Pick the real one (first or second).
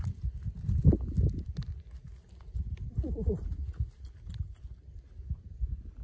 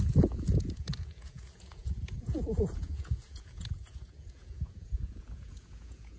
first